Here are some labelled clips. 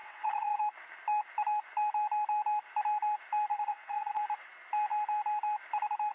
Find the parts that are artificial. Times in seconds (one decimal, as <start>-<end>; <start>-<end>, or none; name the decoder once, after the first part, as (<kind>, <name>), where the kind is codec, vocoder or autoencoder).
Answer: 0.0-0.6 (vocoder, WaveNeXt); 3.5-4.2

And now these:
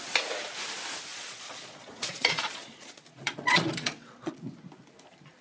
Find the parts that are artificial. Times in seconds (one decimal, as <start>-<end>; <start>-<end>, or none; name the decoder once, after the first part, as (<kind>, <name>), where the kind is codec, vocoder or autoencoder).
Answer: 1.1-4.3 (vocoder, Vocos)

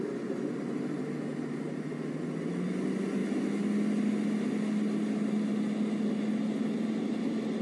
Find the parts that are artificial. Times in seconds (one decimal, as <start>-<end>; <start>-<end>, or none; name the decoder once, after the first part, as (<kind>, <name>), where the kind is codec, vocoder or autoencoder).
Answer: none

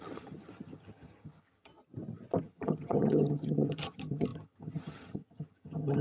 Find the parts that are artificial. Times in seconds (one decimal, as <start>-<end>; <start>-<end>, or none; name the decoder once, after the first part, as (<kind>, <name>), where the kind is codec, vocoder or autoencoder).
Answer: 0.0-1.7 (vocoder, HiFi-GAN); 2.4-6.0

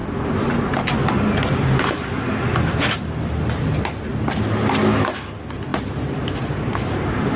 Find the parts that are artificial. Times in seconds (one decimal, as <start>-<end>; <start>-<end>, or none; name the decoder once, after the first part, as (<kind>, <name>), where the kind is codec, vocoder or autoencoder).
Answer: none